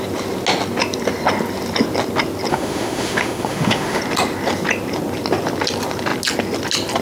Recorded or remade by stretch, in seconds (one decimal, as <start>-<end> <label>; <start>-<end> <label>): 0.0-2.5 recorded; 2.5-4.0 remade; 4.0-7.0 recorded